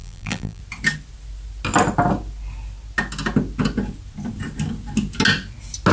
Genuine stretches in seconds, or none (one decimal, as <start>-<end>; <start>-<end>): 0.6-5.9